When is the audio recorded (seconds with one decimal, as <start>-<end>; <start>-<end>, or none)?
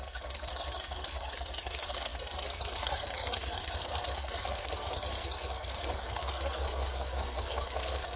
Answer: none